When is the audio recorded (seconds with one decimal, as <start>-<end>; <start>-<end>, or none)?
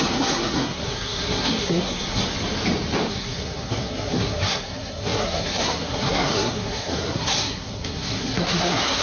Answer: 2.2-3.1